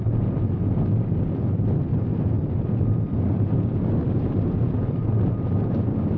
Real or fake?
real